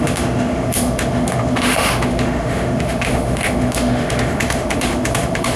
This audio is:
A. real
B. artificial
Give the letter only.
B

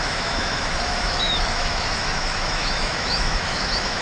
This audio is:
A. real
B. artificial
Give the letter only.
B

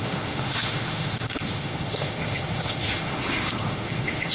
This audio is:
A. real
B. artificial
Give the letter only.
B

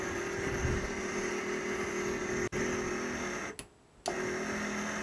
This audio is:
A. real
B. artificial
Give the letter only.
A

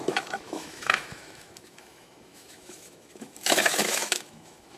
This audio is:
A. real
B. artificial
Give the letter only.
B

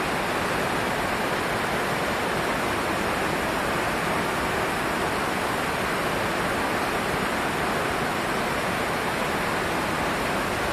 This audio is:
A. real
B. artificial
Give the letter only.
A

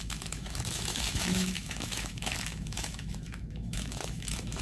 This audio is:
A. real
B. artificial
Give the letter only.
B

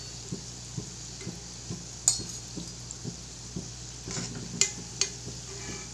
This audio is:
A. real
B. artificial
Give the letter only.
A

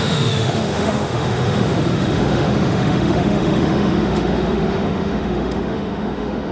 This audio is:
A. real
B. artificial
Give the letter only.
B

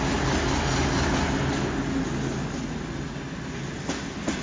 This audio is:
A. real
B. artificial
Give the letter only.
A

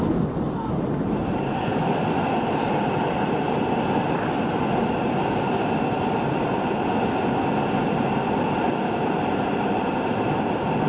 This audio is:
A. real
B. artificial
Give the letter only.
A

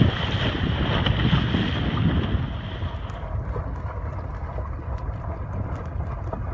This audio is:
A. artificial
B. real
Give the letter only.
B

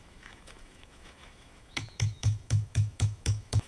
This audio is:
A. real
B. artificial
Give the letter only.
B